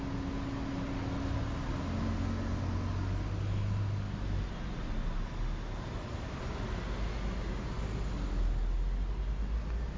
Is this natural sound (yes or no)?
yes